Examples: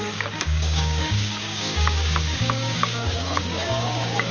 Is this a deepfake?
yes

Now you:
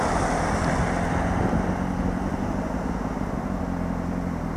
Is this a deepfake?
no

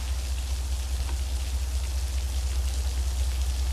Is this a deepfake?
no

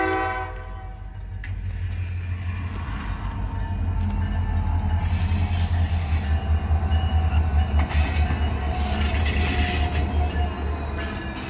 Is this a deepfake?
no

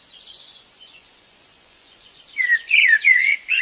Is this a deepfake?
yes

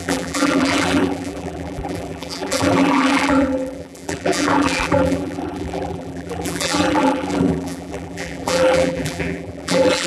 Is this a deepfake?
yes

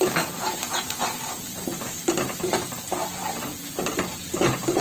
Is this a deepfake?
yes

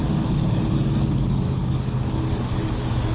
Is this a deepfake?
yes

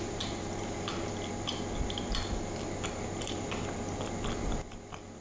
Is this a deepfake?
no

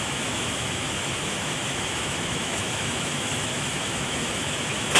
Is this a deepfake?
yes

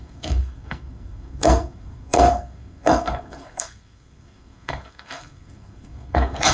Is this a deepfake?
yes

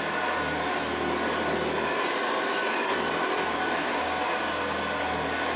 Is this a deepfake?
no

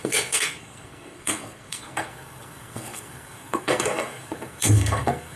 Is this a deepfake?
yes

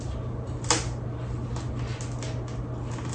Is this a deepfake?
no